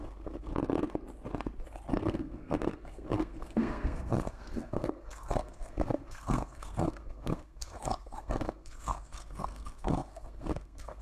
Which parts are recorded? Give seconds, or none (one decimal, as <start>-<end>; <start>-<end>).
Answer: 0.5-1.9